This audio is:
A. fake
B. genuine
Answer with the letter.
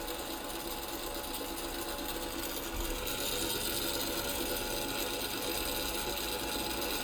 B